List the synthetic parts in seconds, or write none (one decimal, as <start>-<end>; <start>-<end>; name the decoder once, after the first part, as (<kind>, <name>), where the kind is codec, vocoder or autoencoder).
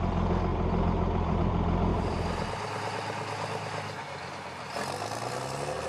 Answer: 0.5-1.4 (vocoder, BigVGAN v2); 1.9-4.3